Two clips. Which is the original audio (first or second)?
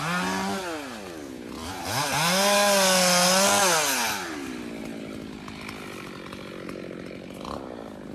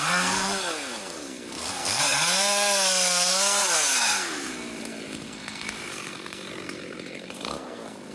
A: first